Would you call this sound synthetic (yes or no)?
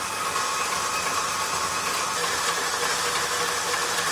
no